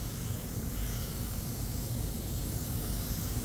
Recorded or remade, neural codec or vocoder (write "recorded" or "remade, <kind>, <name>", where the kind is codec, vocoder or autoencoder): remade, codec, DAC